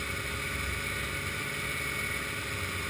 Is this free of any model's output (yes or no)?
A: yes